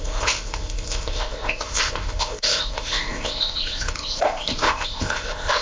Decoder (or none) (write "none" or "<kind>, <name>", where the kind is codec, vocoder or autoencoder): codec, ZipCodec